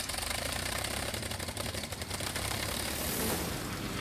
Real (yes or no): no